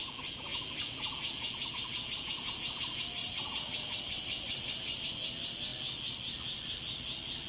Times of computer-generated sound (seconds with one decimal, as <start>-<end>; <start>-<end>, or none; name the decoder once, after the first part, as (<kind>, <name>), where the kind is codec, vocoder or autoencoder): 3.2-5.0 (vocoder, WaveNeXt)